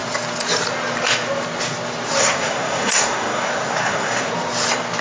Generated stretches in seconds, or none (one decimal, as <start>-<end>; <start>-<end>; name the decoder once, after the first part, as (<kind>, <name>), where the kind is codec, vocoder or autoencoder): 2.2-4.3 (codec, SNAC)